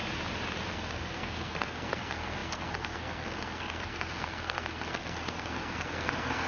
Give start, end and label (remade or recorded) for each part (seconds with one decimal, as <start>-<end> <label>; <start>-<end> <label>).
0.0-0.7 recorded; 0.7-6.5 remade